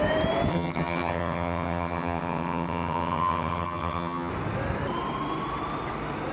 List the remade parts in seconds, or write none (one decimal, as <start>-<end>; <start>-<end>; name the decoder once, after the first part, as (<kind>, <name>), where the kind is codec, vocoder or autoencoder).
0.5-4.3 (vocoder, HiFi-GAN)